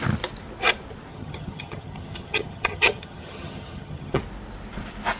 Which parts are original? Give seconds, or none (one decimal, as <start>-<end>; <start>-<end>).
0.0-1.1; 4.2-5.2